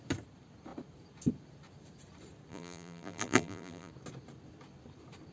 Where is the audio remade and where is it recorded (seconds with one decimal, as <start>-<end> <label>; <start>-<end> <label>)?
0.0-2.5 recorded; 2.5-3.9 remade; 3.9-5.3 recorded